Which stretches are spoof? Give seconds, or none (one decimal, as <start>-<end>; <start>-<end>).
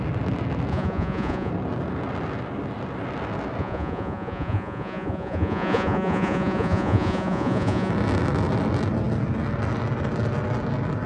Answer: 0.7-1.5; 3.6-7.9